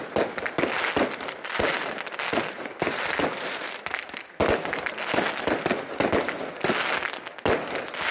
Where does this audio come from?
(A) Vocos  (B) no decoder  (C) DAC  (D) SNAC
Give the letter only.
B